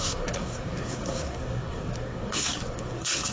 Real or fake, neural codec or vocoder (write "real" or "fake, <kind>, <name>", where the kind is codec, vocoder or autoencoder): fake, codec, SNAC